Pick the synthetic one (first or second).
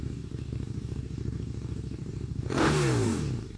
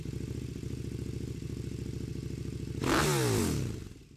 first